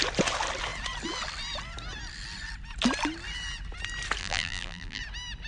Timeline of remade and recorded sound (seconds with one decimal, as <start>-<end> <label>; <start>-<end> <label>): 0.0-4.2 recorded; 4.2-5.0 remade; 5.0-5.5 recorded